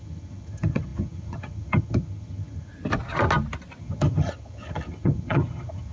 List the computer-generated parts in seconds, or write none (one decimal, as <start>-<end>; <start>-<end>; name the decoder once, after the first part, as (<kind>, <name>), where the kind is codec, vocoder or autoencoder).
0.0-2.7 (vocoder, HiFi-GAN); 3.8-5.9